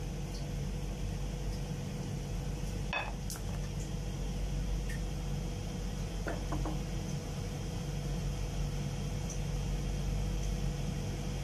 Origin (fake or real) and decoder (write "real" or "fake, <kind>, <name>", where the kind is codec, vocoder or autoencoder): real